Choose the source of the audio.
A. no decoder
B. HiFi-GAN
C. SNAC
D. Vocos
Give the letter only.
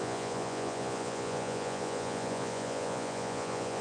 D